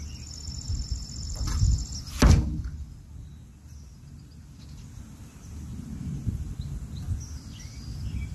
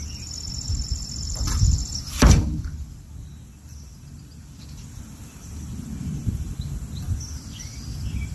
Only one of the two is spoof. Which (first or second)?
second